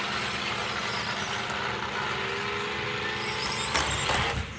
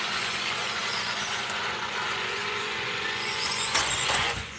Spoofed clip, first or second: second